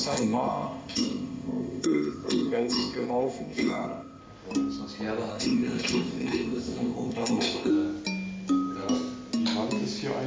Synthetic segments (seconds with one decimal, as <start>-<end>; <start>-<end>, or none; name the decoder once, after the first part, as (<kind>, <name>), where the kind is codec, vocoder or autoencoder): 0.0-4.2 (codec, ZipCodec); 5.3-7.7

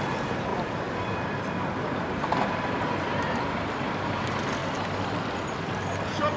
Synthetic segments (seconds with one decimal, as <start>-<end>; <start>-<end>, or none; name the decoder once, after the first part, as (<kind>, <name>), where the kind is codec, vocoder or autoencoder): none

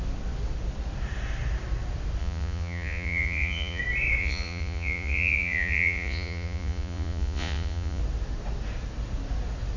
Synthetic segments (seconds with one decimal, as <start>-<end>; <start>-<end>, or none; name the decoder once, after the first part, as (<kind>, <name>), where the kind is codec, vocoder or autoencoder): 2.2-3.8 (vocoder, Vocos); 4.2-8.0

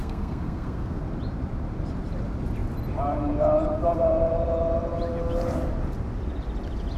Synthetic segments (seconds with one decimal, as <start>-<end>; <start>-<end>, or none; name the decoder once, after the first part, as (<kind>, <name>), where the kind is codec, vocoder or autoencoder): 0.0-1.0 (codec, SNAC)

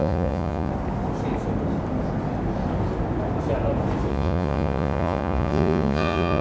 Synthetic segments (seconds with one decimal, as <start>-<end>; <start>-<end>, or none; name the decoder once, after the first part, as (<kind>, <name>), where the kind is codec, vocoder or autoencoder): 0.0-0.7 (vocoder, Vocos); 4.1-6.4

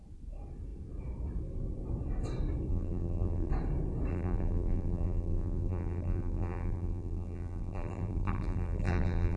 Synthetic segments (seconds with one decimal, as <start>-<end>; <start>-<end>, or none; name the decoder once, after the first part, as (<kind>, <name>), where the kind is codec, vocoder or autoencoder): 2.7-3.5 (vocoder, BigVGAN v2); 4.1-9.4

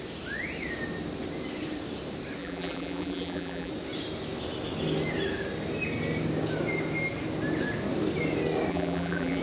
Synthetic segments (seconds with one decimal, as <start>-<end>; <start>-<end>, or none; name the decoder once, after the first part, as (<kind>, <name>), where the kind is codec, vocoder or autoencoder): 2.4-3.7 (vocoder, BigVGAN v2); 8.7-9.4

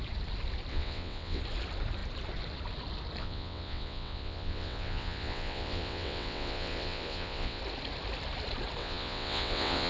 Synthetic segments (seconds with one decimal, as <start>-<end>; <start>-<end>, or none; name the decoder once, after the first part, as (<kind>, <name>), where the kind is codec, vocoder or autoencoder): 0.7-1.4 (vocoder, WaveNeXt); 3.2-7.6; 8.8-9.9